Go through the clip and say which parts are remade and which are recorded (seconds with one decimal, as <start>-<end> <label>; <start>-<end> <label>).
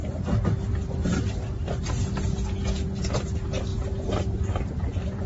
0.0-5.3 recorded